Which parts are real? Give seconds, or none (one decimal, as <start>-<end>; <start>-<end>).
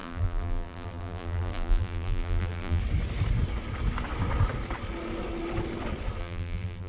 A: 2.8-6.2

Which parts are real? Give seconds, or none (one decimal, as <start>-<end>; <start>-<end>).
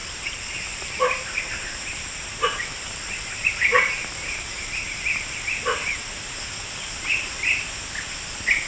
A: 5.0-6.0; 6.5-8.7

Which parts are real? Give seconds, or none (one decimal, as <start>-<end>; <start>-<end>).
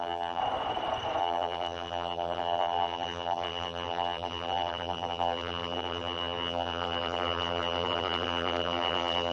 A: 0.4-1.2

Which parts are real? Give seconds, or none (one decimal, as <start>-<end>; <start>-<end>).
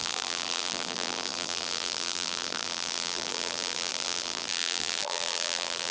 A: none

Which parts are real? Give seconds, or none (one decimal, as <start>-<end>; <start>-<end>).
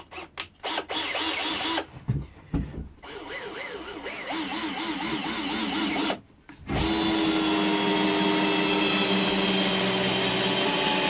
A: 0.0-11.1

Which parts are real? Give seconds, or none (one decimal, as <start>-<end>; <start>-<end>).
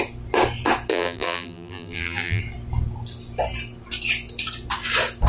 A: 0.0-0.9; 2.4-5.3